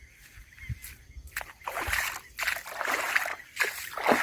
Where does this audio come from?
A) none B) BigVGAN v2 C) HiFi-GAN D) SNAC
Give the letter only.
A